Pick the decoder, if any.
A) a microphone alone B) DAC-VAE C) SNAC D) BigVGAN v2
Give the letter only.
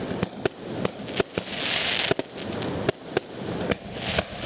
A